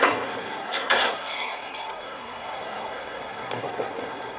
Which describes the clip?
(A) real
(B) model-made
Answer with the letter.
B